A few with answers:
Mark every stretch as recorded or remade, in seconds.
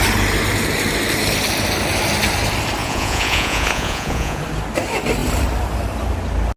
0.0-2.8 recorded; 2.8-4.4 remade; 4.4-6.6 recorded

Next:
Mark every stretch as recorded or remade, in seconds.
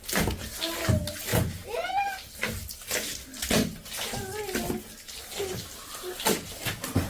0.0-1.3 recorded; 1.3-1.9 remade; 1.9-7.1 recorded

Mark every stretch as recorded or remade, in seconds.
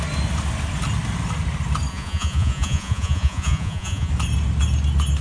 0.0-1.9 recorded; 1.9-4.1 remade; 4.1-5.2 recorded